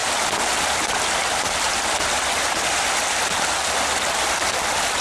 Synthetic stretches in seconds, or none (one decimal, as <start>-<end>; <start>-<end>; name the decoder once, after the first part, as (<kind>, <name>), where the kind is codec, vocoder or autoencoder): none

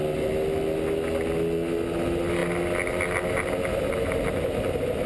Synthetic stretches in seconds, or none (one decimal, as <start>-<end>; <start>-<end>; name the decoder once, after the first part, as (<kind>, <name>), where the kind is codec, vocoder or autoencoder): none

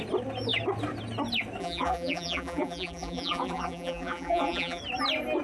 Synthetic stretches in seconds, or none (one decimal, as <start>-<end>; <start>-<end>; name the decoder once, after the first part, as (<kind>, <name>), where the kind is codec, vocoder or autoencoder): 1.6-4.8 (vocoder, BigVGAN v2)

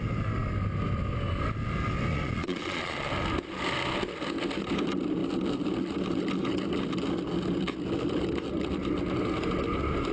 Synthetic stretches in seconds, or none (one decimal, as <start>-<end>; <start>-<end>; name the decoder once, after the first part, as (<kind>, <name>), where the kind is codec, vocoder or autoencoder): 2.1-3.1 (vocoder, Vocos)

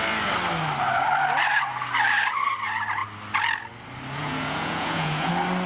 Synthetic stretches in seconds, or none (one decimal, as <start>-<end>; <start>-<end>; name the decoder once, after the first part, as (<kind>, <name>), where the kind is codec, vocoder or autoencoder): 4.2-5.3 (vocoder, Vocos)

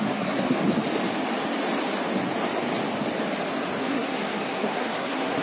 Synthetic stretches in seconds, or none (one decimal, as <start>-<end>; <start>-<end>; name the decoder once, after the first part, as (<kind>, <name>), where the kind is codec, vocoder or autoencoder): 0.0-0.6 (codec, SNAC); 3.8-5.4

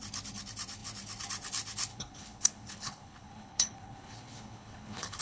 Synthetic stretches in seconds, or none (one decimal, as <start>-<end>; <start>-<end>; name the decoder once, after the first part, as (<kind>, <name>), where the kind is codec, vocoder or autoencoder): 1.9-5.2 (codec, HILCodec)

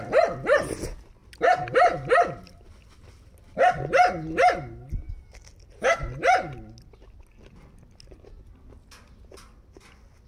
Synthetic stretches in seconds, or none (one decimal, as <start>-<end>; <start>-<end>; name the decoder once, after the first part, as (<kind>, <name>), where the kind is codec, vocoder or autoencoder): none